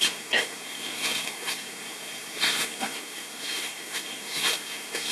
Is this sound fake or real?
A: fake